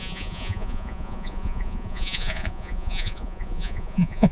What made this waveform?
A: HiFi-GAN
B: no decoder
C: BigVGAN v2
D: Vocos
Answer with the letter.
D